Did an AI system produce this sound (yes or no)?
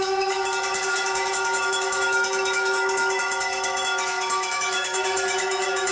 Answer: yes